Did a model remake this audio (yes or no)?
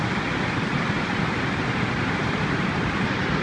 yes